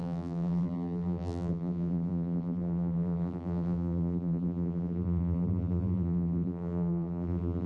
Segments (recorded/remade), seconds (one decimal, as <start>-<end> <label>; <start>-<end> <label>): 0.0-7.7 remade